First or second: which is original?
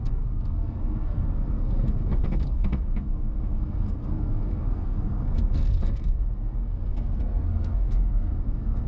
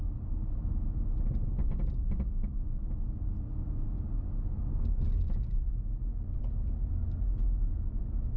second